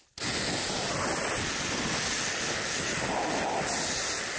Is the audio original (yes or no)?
yes